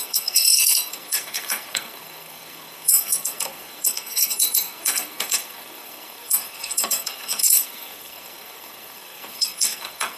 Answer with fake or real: fake